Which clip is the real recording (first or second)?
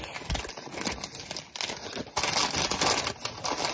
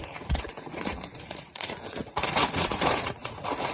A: first